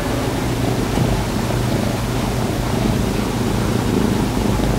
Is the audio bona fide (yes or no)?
yes